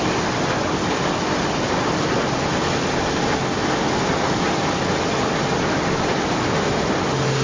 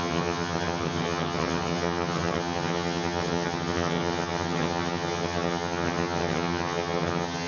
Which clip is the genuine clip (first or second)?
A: first